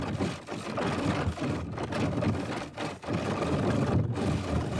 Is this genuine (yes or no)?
yes